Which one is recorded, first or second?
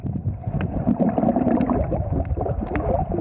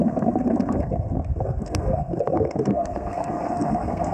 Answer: first